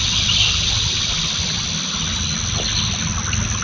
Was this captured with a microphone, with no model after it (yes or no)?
yes